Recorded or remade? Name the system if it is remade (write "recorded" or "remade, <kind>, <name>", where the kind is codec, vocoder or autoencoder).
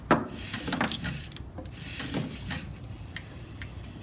remade, vocoder, BigVGAN v2